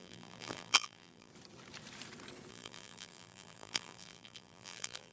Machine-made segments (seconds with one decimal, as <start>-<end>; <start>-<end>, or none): 0.0-1.3; 2.5-5.1

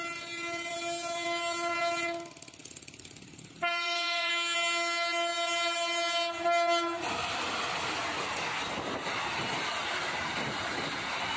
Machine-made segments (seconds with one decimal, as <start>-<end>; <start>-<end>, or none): 2.6-4.3

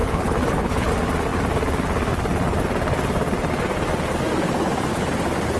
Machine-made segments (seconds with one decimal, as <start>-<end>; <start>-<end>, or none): 0.0-0.9

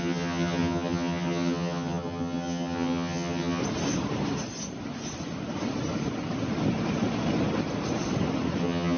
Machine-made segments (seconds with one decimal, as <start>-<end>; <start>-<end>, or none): 0.0-3.6; 8.6-9.0

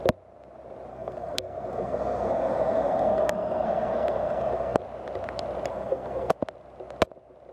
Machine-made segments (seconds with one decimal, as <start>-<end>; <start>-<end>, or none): 0.9-4.8; 5.7-6.3